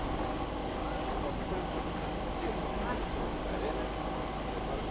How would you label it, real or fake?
real